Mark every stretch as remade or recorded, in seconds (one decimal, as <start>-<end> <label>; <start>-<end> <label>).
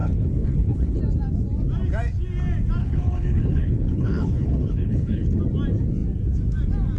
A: 0.0-1.0 remade; 1.0-2.8 recorded; 2.8-5.4 remade; 5.4-7.0 recorded